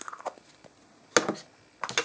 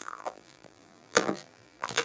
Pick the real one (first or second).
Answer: first